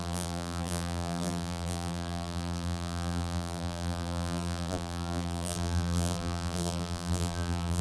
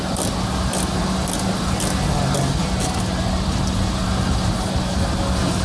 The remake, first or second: first